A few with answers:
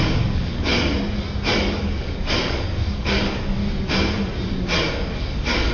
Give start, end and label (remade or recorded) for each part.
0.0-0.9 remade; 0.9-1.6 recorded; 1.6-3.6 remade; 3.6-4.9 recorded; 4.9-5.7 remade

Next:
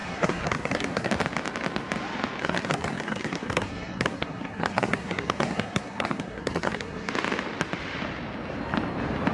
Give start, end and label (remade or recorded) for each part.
0.0-1.1 remade; 1.1-2.4 recorded; 2.4-7.1 remade; 7.1-9.3 recorded

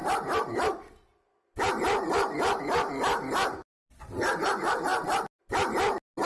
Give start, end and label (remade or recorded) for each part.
0.0-6.3 recorded

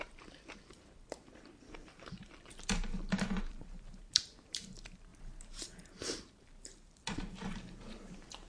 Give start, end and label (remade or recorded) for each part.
0.0-5.1 remade; 5.1-5.6 recorded; 5.6-8.5 remade